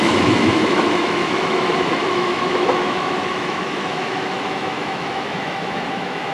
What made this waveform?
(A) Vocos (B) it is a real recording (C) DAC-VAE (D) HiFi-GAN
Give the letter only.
C